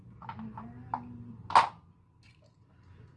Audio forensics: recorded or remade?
recorded